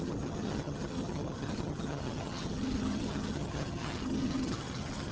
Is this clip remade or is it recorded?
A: remade